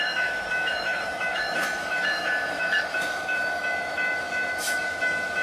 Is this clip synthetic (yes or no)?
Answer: yes